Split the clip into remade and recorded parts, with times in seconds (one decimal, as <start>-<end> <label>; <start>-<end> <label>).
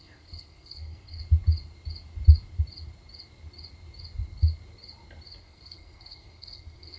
0.0-1.2 remade; 1.2-5.4 recorded; 5.4-7.0 remade